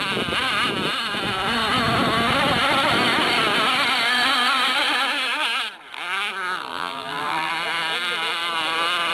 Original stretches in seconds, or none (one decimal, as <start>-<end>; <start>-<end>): 0.0-6.7; 7.5-9.1